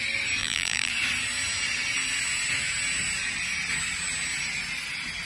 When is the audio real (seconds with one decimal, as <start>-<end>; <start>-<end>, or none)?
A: 0.0-0.4; 0.9-5.2